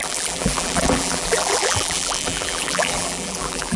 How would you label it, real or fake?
fake